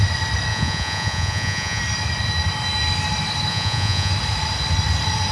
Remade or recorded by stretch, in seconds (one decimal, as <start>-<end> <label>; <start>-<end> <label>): 0.0-0.5 recorded; 0.5-1.8 remade; 1.8-3.5 recorded; 3.5-4.1 remade; 4.1-5.3 recorded